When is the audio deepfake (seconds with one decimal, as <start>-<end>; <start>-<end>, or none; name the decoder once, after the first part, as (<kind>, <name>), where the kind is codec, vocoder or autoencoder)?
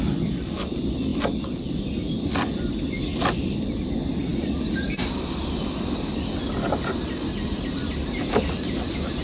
none